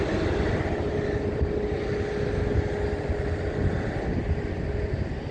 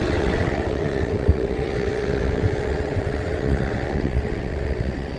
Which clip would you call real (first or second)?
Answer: first